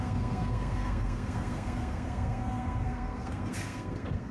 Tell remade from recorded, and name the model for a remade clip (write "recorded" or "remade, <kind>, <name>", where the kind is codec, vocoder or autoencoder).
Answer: remade, codec, SNAC